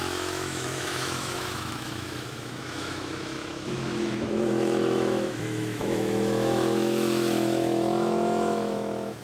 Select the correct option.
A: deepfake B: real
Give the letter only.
A